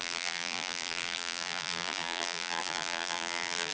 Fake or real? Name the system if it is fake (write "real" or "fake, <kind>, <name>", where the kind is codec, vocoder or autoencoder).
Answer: fake, vocoder, BigVGAN v2